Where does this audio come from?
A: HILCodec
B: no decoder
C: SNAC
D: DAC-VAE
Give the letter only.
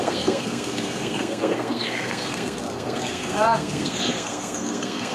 C